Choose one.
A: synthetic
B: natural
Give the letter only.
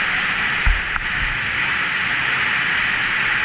B